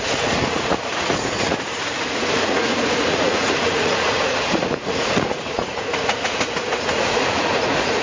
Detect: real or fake fake